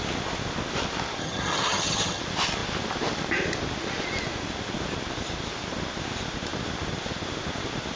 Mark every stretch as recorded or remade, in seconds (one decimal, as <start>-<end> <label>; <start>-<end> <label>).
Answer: 0.0-1.2 recorded; 1.2-2.2 remade; 2.2-8.0 recorded